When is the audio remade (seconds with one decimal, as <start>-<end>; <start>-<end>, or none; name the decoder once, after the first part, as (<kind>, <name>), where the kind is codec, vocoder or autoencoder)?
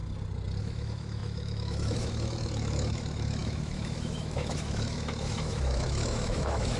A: 0.6-6.8 (autoencoder, DAC-VAE)